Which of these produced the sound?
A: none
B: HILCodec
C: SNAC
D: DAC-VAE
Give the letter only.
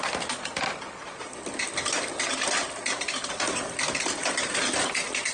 A